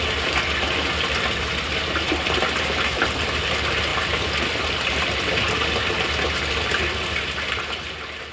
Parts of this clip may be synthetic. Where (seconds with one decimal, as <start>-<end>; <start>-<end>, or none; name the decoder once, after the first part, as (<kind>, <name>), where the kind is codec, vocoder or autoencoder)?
3.9-6.8 (vocoder, BigVGAN v2)